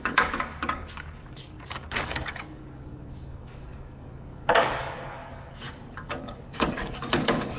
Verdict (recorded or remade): remade